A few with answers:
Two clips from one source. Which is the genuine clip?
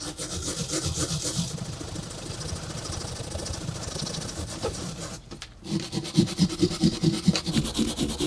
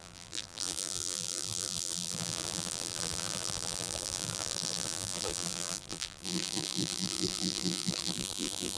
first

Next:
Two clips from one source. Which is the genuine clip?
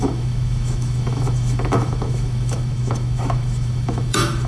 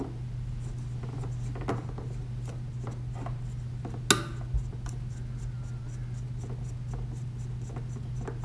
second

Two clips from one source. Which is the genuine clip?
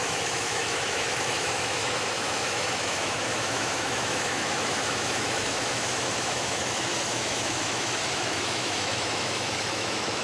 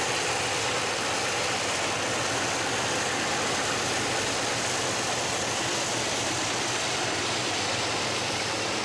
second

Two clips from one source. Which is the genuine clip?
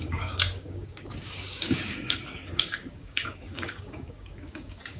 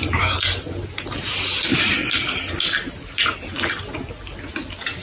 second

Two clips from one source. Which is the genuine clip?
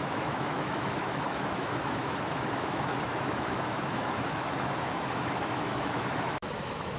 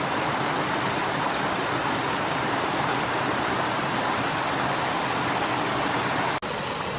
second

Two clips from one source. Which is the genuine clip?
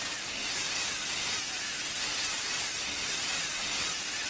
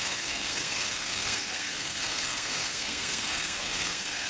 first